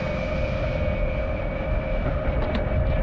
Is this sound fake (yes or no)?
no